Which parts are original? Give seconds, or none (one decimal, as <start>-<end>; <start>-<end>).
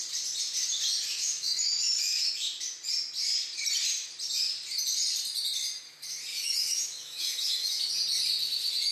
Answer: 0.0-1.2; 2.3-6.3; 7.9-8.9